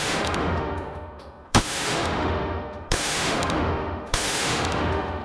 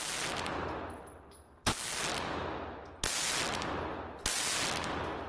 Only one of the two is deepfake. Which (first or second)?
first